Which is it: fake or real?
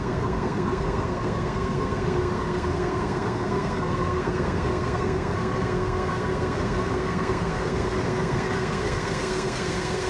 fake